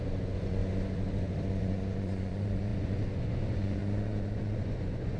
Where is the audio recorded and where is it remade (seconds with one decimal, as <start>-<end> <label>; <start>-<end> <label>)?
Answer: 0.0-0.6 remade; 0.6-1.5 recorded; 1.5-5.2 remade

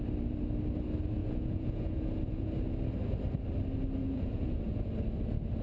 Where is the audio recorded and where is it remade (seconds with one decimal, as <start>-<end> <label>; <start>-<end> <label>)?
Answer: 0.0-1.2 recorded; 1.2-2.5 remade; 2.5-4.0 recorded; 4.0-4.9 remade; 4.9-5.6 recorded